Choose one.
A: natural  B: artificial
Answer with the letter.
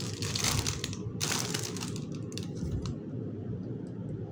A